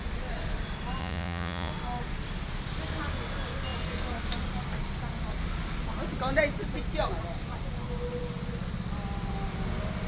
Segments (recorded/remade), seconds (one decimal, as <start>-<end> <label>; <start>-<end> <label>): 0.0-1.0 recorded; 1.0-1.7 remade; 1.7-10.1 recorded